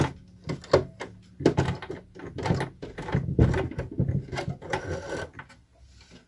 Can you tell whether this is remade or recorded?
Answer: recorded